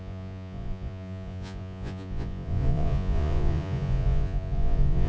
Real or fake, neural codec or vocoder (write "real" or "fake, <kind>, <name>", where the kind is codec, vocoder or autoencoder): fake, vocoder, Vocos